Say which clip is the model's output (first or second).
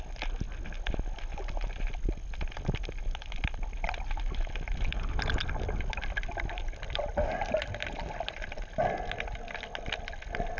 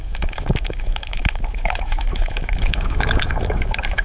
second